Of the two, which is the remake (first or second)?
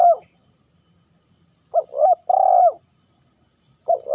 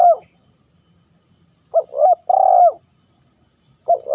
first